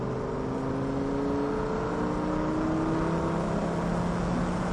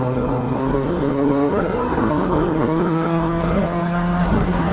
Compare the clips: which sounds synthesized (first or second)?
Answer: second